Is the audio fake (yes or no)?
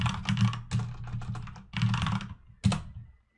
no